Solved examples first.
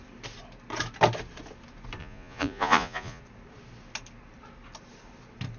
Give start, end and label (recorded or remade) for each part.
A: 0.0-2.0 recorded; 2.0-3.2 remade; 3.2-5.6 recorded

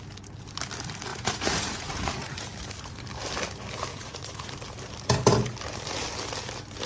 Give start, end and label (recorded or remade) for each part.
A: 0.0-1.1 recorded; 1.1-2.4 remade; 2.4-3.9 recorded; 3.9-4.5 remade; 4.5-6.9 recorded

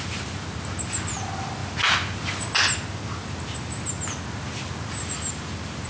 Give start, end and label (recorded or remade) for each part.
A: 0.0-5.9 recorded

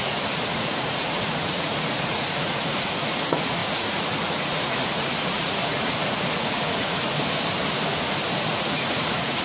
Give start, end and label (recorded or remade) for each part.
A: 0.0-7.2 remade; 7.2-8.5 recorded; 8.5-9.4 remade